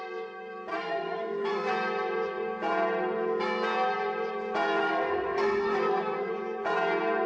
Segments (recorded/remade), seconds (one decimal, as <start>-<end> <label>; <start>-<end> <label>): 0.0-0.7 recorded; 0.7-1.7 remade; 1.7-4.8 recorded; 4.8-6.3 remade; 6.3-7.3 recorded